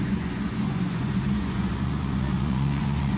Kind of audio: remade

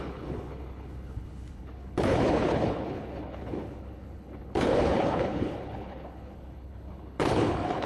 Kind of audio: remade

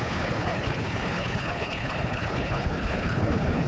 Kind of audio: remade